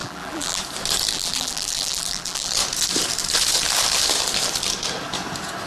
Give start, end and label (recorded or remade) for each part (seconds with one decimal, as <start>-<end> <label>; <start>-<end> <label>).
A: 0.0-0.6 remade; 0.6-1.1 recorded; 1.1-2.5 remade; 2.5-5.7 recorded